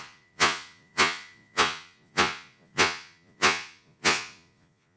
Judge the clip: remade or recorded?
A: remade